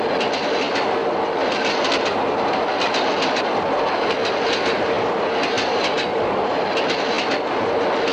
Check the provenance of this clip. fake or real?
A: real